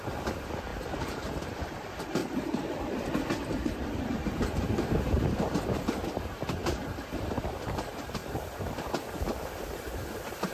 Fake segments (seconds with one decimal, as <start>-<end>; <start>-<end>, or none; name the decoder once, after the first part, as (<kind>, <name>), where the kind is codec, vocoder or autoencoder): 0.0-0.7 (vocoder, BigVGAN v2); 1.5-8.2; 9.2-10.5

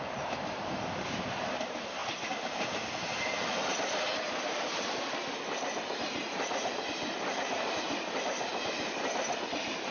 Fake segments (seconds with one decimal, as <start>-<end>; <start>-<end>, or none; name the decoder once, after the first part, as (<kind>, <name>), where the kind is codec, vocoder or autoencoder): 0.0-2.0 (vocoder, BigVGAN v2); 2.6-8.5; 9.5-9.9

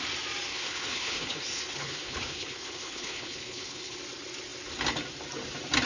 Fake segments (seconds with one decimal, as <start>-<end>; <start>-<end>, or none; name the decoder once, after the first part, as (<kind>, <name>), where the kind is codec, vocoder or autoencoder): 0.5-4.0 (codec, HILCodec)

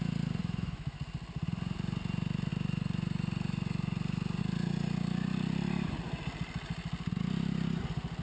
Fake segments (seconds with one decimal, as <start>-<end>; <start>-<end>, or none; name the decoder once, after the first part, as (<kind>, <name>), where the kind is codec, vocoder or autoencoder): 0.4-1.0 (autoencoder, DAC-VAE)